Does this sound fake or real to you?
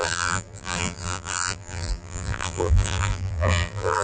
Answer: fake